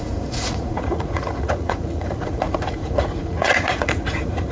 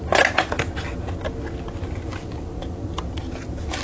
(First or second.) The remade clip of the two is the first